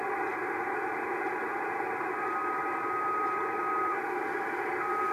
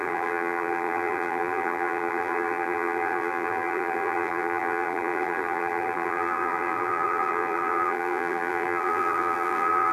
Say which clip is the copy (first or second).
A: second